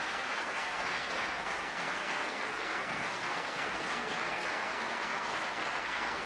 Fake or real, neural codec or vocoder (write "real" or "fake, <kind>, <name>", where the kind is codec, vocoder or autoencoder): fake, codec, SNAC